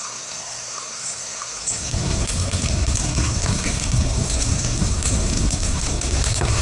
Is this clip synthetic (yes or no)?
yes